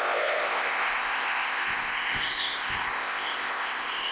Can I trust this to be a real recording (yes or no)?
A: no